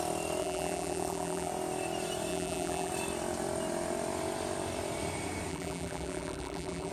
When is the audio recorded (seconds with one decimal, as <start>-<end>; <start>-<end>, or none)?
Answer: 0.0-0.4; 1.5-2.3; 2.9-5.5